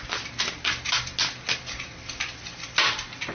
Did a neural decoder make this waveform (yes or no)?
no